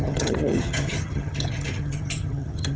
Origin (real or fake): fake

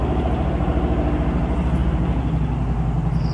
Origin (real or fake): real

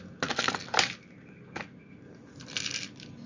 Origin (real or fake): real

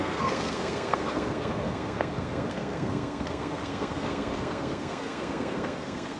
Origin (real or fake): fake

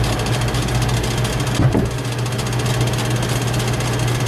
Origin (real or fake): real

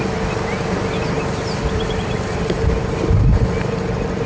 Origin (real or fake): real